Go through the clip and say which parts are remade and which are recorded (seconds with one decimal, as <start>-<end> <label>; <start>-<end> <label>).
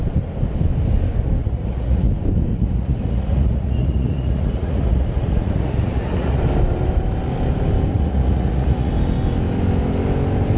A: 0.0-1.4 recorded; 1.4-2.1 remade; 2.1-2.5 recorded; 2.5-6.4 remade; 6.4-7.9 recorded; 7.9-8.9 remade; 8.9-10.6 recorded